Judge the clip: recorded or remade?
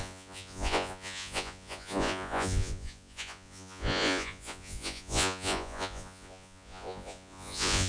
remade